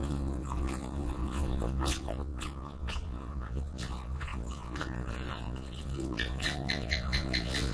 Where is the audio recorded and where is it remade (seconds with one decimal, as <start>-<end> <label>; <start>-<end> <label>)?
0.0-7.7 remade